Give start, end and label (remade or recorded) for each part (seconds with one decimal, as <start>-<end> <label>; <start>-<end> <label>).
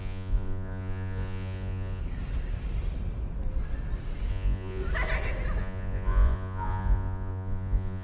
0.0-2.0 remade; 2.0-4.3 recorded; 4.3-4.8 remade; 4.8-5.6 recorded; 5.6-8.0 remade